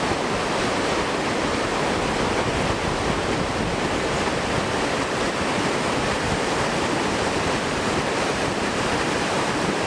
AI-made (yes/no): no